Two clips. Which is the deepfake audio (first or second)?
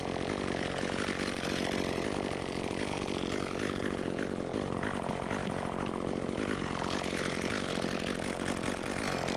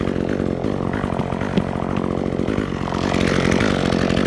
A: first